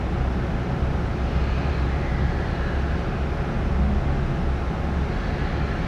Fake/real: real